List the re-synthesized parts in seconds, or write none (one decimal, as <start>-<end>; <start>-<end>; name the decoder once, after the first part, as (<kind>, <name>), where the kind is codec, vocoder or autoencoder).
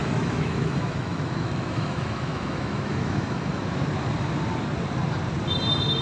0.0-3.6 (autoencoder, DAC-VAE)